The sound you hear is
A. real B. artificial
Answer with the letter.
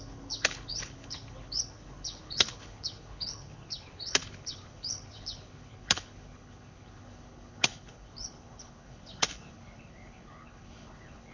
B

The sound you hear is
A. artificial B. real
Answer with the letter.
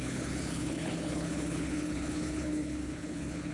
A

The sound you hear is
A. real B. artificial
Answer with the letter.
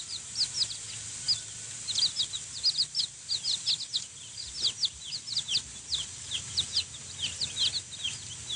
A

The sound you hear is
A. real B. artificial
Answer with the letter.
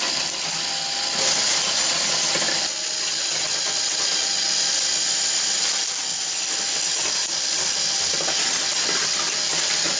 A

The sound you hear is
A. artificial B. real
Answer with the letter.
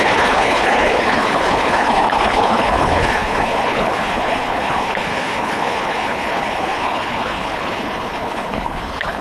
A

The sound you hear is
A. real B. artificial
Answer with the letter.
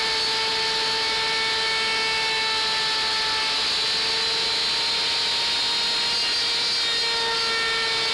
A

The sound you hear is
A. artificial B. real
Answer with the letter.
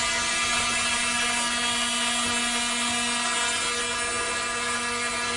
B